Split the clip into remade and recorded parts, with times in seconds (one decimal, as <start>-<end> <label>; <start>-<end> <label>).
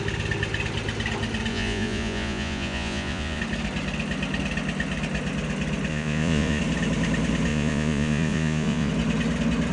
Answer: 0.0-1.5 recorded; 1.5-3.4 remade; 3.4-5.9 recorded; 5.9-6.6 remade; 6.6-7.5 recorded; 7.5-8.9 remade; 8.9-9.7 recorded